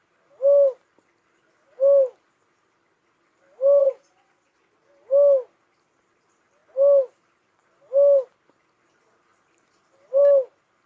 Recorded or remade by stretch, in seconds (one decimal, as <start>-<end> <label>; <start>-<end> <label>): 0.0-3.8 recorded; 3.8-4.6 remade; 4.6-10.9 recorded

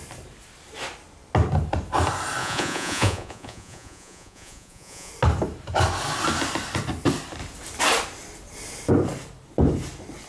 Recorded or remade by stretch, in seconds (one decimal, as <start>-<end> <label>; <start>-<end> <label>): 0.0-2.4 recorded; 2.4-5.1 remade; 5.1-10.3 recorded